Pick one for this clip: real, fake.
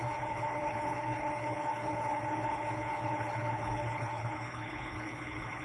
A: fake